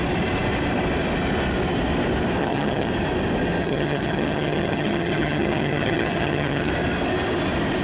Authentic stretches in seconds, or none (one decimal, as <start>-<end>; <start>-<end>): 0.0-2.4; 2.9-3.6; 6.7-7.8